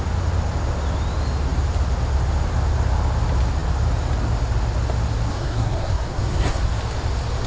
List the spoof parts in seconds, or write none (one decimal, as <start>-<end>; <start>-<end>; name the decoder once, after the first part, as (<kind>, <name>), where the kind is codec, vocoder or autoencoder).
5.3-6.6 (codec, SNAC)